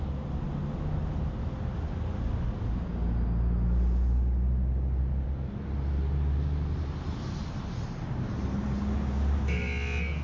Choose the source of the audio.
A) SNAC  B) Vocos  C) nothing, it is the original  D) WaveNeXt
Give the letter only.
C